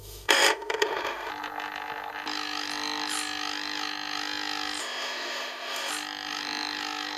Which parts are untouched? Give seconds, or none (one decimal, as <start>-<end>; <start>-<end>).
1.3-4.8; 5.9-7.2